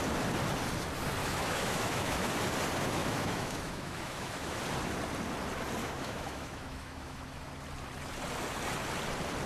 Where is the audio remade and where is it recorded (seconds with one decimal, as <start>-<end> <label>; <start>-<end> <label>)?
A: 0.0-1.2 recorded; 1.2-2.3 remade; 2.3-3.0 recorded; 3.0-4.6 remade; 4.6-5.8 recorded; 5.8-7.5 remade; 7.5-9.5 recorded